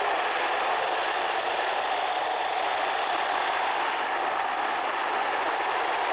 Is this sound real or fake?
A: real